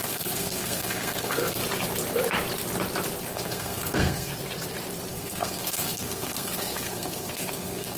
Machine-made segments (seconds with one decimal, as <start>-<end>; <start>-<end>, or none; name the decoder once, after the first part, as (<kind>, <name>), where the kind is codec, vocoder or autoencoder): 0.0-1.6 (codec, SNAC); 3.2-4.3; 5.1-8.0